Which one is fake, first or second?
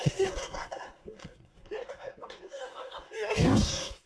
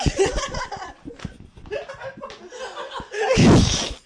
first